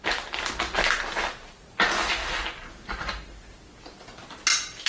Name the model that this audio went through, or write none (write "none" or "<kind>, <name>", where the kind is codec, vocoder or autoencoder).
none